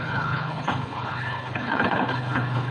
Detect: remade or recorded remade